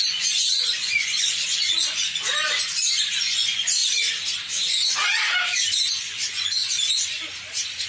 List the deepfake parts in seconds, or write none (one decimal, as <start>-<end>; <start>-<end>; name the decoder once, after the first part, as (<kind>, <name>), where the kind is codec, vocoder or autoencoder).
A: 0.0-2.1 (vocoder, Vocos); 3.0-3.8; 5.9-6.6